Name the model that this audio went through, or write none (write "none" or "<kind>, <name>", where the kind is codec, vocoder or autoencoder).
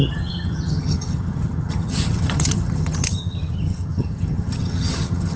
vocoder, HiFi-GAN